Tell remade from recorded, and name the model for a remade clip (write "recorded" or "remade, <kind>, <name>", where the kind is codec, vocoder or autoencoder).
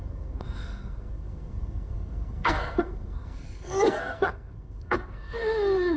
remade, codec, SNAC